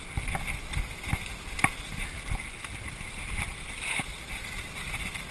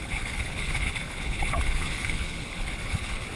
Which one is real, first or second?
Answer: first